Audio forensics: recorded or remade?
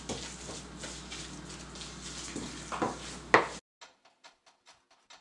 recorded